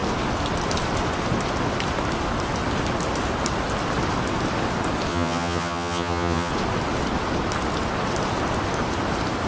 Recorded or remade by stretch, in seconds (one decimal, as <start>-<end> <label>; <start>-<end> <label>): 0.0-5.1 recorded; 5.1-6.5 remade; 6.5-9.5 recorded